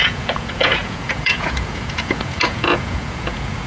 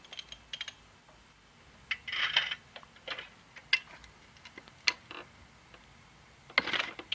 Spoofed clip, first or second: first